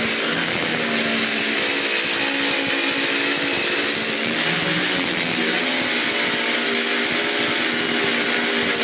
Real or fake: real